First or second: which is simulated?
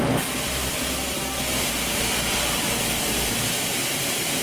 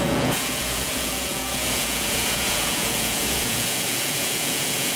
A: second